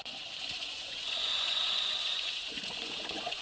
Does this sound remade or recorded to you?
remade